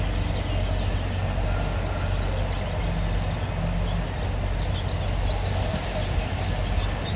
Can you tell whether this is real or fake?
real